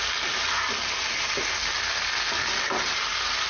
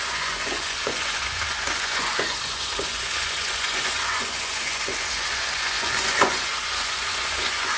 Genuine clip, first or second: first